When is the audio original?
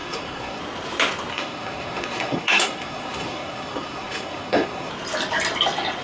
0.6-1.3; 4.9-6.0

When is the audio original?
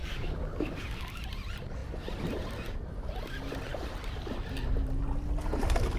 1.2-6.0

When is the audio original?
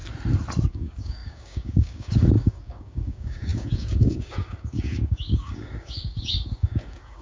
0.0-0.7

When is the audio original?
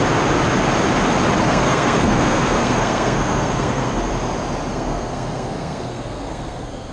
0.0-1.4; 4.1-4.7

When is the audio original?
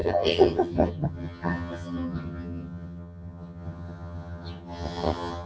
none